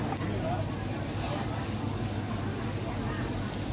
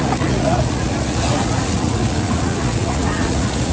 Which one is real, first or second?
first